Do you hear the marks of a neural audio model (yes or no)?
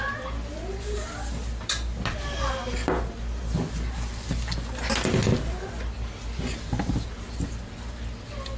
no